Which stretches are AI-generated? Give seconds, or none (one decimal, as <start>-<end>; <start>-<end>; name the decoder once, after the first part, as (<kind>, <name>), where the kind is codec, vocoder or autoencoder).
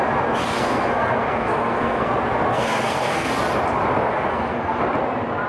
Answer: 0.4-2.1 (codec, SNAC); 2.5-3.3; 4.3-4.8